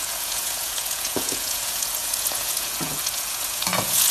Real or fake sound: fake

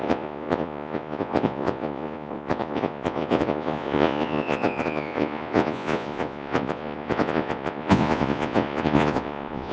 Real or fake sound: fake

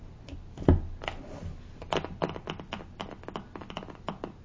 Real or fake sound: real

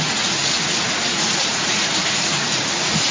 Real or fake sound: fake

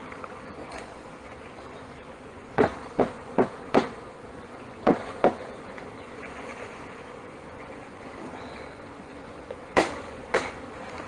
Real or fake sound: fake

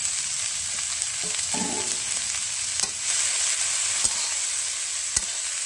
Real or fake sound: real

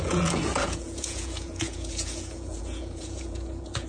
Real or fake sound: fake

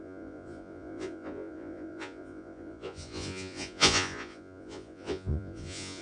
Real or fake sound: fake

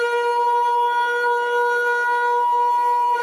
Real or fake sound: real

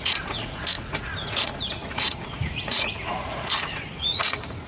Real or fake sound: fake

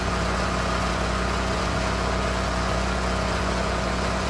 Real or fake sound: fake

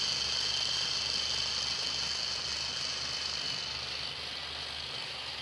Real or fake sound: real